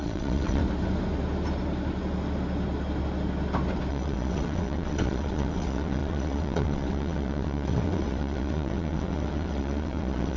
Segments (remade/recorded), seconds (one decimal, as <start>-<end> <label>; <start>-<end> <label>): 0.0-0.6 remade; 0.6-3.9 recorded; 3.9-10.4 remade